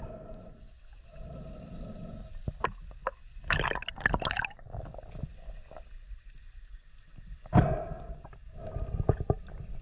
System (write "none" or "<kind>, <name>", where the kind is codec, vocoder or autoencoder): none